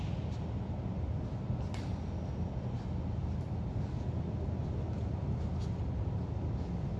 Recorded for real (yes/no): yes